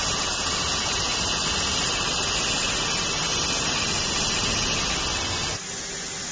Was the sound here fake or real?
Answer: real